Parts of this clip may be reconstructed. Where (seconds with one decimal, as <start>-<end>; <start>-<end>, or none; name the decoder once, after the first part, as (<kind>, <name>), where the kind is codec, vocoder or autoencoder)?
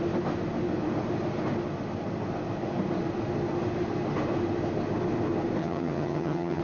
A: 5.6-6.6 (vocoder, HiFi-GAN)